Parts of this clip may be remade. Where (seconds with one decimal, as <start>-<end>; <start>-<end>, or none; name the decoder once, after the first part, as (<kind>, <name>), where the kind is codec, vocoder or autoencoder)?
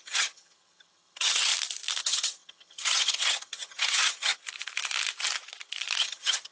0.0-1.5 (vocoder, HiFi-GAN); 2.0-4.4; 6.0-6.5